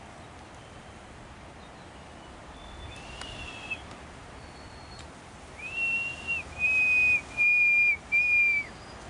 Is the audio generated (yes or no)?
no